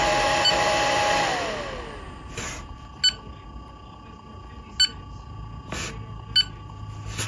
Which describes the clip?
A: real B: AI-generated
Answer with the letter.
A